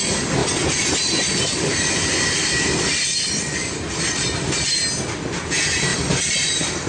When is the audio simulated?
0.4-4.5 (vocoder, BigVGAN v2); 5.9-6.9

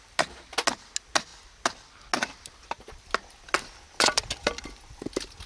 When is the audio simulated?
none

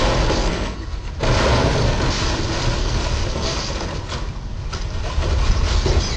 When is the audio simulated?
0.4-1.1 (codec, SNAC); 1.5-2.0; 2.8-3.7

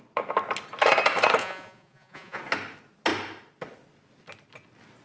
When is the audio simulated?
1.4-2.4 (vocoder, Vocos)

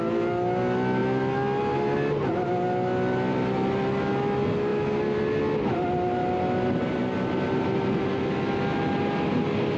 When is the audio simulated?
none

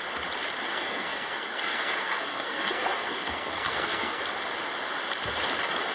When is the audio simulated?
0.7-4.2 (codec, SNAC)

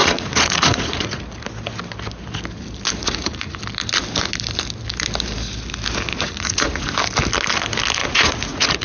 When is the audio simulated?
0.0-1.2 (vocoder, Vocos); 3.0-3.6; 6.1-6.9; 8.0-8.8